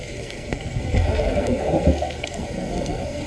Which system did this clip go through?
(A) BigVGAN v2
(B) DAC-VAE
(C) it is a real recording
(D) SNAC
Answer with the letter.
D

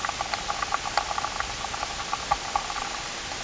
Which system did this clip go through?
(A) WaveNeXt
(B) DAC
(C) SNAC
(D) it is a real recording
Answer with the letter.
D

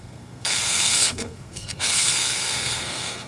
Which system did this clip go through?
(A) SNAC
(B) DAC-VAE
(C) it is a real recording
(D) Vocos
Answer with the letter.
A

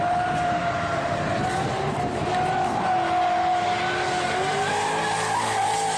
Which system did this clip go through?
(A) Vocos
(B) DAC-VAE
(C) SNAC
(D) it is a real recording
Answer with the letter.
D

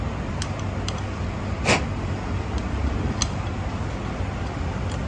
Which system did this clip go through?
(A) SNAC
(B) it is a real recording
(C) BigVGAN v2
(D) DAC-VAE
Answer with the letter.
B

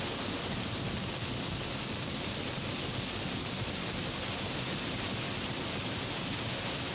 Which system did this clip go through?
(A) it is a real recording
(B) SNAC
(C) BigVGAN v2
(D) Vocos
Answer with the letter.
A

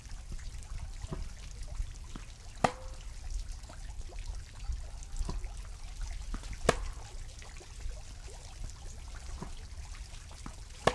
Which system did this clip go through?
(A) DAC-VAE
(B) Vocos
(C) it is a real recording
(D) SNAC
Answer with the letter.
C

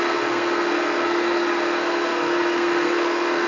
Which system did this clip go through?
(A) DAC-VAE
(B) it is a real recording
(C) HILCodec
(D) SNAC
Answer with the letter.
D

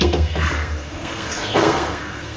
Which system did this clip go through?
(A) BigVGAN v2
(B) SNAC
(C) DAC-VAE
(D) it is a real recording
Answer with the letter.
B